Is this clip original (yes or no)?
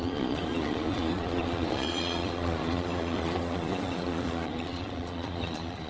no